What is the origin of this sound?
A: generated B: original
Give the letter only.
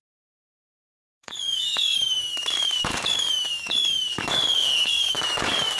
A